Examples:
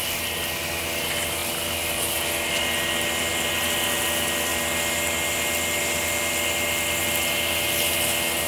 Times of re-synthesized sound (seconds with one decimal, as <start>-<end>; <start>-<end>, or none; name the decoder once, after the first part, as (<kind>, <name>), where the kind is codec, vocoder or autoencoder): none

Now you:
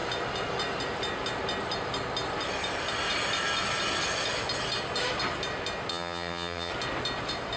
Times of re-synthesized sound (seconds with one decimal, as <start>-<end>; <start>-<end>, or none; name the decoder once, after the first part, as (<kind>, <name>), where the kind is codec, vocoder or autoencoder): 5.9-6.7 (vocoder, HiFi-GAN)

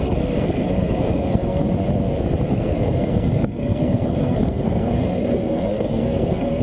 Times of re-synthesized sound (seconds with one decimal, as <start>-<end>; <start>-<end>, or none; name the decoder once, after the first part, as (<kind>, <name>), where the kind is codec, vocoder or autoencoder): 0.0-1.6 (codec, SNAC); 2.5-6.6

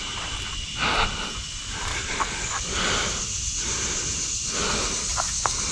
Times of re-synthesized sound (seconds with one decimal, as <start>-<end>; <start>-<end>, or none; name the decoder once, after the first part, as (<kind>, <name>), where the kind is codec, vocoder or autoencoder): 1.9-2.9 (codec, DAC)